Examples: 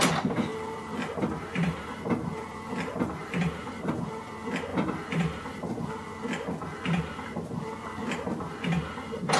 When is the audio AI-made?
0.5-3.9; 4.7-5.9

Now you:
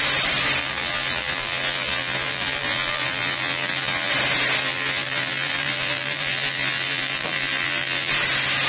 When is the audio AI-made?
0.6-4.1; 4.6-8.1

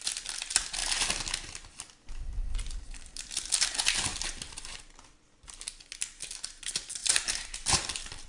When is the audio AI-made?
4.1-4.8; 7.0-8.3

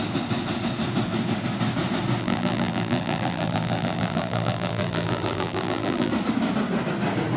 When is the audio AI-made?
2.2-6.1